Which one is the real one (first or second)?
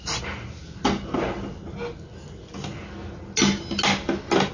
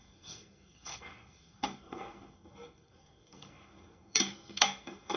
first